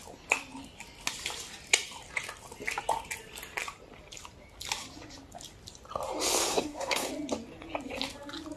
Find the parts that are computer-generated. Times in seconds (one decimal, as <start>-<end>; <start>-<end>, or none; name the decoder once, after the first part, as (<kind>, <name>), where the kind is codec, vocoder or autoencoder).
6.5-7.1 (codec, SNAC)